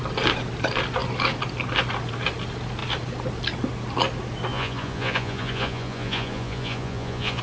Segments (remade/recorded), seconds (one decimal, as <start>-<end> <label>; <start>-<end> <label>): 0.0-4.5 recorded; 4.5-7.4 remade